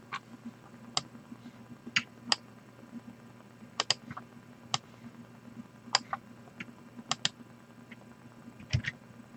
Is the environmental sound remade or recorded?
recorded